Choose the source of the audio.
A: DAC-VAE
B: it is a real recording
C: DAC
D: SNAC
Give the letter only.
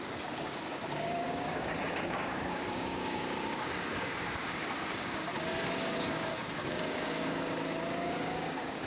C